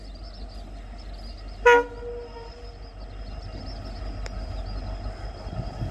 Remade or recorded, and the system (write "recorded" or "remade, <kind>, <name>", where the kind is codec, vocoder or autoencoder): recorded